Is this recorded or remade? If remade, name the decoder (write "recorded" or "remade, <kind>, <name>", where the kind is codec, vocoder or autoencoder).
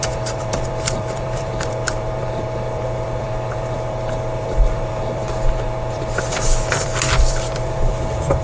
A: remade, vocoder, BigVGAN v2